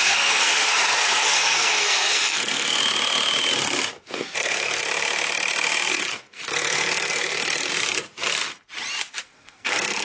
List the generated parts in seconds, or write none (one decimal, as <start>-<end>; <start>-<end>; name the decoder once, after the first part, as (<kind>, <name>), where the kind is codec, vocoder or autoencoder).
0.0-2.8 (codec, SNAC); 4.0-4.8; 5.9-7.7; 9.2-10.0